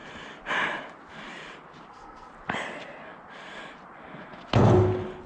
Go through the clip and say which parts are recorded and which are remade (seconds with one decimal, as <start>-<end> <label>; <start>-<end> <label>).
0.0-1.9 recorded; 1.9-2.3 remade; 2.3-5.3 recorded